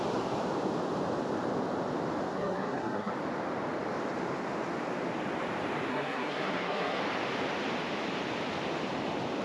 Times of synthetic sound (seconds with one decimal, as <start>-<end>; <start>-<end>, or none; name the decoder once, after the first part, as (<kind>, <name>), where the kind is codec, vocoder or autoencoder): 2.3-3.1 (codec, SNAC); 5.9-7.0